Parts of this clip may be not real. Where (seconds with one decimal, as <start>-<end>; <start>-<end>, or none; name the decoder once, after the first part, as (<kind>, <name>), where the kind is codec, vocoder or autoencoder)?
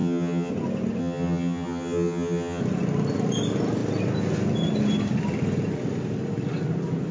0.0-0.5 (vocoder, HiFi-GAN); 1.0-2.6